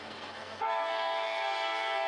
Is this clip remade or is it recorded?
remade